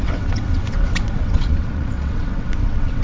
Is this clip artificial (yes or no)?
yes